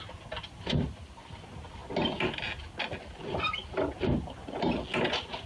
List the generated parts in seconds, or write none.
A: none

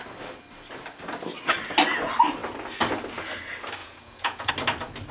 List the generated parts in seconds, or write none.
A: 3.8-4.5

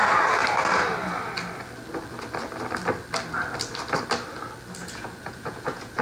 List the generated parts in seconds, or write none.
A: 4.8-6.0

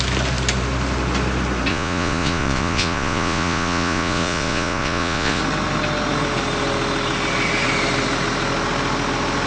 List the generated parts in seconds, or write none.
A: 1.7-5.4